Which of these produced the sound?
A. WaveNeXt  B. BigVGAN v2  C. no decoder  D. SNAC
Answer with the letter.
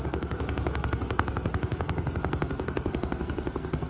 D